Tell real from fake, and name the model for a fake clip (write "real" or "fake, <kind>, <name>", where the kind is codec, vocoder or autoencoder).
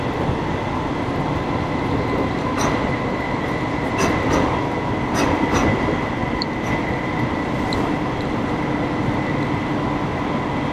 real